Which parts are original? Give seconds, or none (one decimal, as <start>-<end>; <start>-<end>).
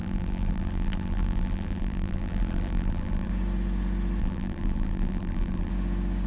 3.3-4.2; 5.7-6.3